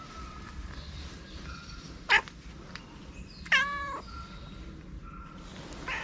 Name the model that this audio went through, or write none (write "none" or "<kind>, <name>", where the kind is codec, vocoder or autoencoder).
vocoder, BigVGAN v2